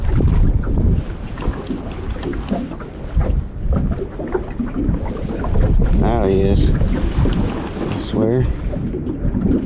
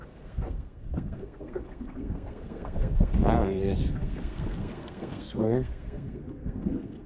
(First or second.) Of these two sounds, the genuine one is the first